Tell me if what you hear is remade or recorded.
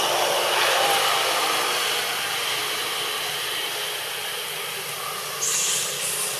recorded